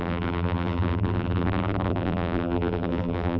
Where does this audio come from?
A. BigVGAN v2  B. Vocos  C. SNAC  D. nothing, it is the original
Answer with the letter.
A